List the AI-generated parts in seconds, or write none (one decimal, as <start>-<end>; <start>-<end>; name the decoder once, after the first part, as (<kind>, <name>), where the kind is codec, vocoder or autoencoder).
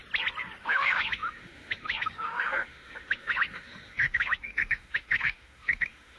0.6-6.2 (autoencoder, DAC-VAE)